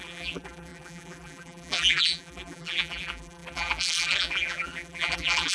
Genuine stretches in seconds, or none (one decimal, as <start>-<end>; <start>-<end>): none